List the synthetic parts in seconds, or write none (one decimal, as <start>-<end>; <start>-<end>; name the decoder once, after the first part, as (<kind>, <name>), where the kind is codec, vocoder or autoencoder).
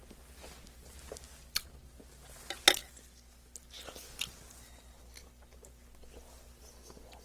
none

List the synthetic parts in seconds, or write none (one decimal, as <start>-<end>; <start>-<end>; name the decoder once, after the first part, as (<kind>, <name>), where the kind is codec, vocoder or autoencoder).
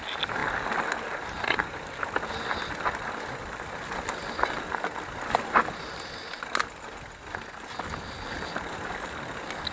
none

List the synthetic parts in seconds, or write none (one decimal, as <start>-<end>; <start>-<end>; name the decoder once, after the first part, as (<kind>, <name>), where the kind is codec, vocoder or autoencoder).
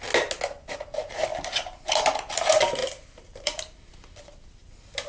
1.3-2.4 (vocoder, BigVGAN v2); 2.8-3.9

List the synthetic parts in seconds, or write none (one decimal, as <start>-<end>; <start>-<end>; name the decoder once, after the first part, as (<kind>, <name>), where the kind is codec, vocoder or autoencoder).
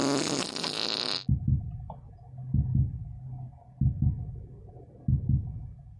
none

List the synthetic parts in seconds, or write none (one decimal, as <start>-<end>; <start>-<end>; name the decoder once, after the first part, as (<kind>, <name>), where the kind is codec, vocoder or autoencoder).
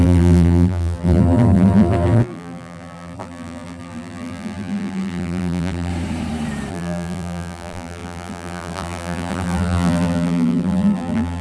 0.0-5.9 (vocoder, BigVGAN v2); 6.7-11.4